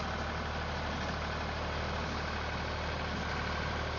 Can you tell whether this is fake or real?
real